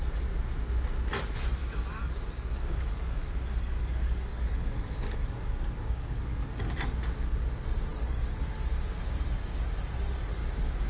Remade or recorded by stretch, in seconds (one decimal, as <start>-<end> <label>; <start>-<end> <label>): 0.0-1.6 recorded; 1.6-6.7 remade; 6.7-7.9 recorded; 7.9-8.7 remade; 8.7-10.9 recorded

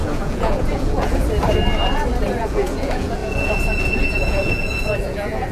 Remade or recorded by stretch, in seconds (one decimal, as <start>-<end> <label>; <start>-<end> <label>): 0.0-1.2 remade; 1.2-2.4 recorded; 2.4-5.5 remade

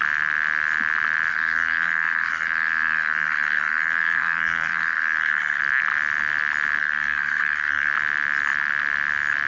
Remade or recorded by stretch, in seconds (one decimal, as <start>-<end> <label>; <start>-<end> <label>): 0.0-1.3 recorded; 1.3-5.6 remade; 5.6-6.8 recorded; 6.8-7.9 remade; 7.9-9.5 recorded

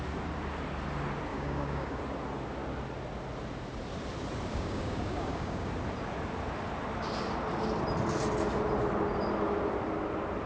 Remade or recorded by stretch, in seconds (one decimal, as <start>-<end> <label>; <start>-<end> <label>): 0.0-1.3 recorded; 1.3-2.0 remade; 2.0-4.5 recorded; 4.5-5.7 remade; 5.7-10.5 recorded

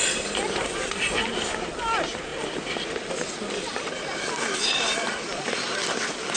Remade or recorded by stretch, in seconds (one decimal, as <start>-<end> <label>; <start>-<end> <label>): 0.0-6.4 recorded

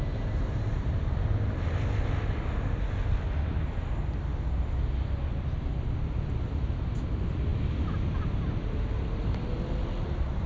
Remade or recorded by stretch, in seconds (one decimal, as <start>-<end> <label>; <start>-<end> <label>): 0.0-10.5 recorded

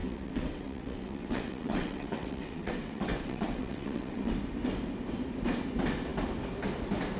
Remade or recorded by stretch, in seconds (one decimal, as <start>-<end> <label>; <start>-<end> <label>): 0.0-4.3 remade; 4.3-7.2 recorded

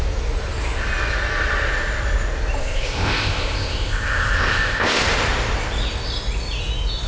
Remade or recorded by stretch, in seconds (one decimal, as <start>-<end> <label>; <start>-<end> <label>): 0.0-2.6 recorded; 2.6-5.0 remade; 5.0-7.1 recorded